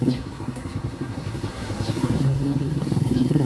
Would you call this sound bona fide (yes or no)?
no